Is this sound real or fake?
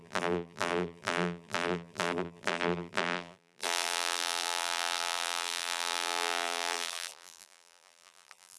fake